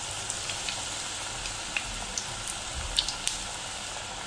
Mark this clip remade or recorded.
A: remade